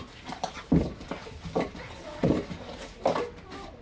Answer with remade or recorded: recorded